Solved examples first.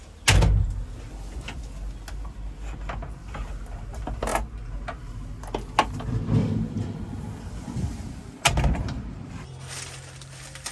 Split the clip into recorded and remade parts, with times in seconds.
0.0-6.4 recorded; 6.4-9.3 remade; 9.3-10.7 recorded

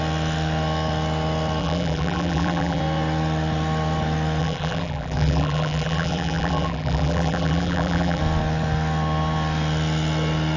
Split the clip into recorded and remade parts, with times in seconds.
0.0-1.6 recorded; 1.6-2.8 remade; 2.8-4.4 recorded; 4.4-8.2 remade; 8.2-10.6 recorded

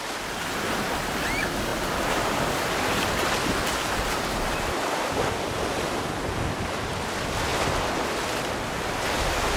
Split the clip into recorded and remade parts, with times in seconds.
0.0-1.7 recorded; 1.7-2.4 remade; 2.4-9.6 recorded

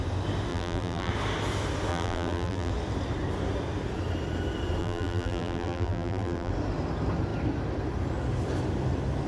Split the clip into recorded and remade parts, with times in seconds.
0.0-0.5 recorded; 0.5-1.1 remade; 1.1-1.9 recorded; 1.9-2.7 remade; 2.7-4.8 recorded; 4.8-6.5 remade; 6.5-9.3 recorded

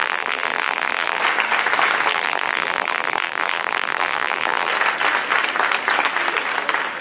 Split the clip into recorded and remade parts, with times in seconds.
0.0-1.2 remade; 1.2-2.1 recorded; 2.1-4.7 remade; 4.7-7.0 recorded